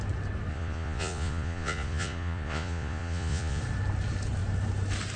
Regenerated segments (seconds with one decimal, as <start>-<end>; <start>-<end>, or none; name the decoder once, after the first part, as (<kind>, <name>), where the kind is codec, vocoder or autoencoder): 0.5-3.6 (vocoder, Vocos)